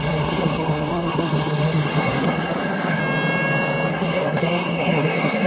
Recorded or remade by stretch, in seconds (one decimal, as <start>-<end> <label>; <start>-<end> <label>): 0.0-3.0 remade; 3.0-3.9 recorded; 3.9-5.5 remade